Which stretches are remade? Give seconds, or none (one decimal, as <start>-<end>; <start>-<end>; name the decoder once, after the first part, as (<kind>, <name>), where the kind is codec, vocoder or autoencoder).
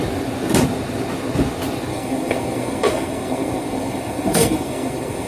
1.9-5.3 (codec, SNAC)